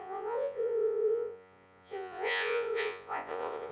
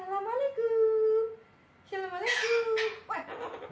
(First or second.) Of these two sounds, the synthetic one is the first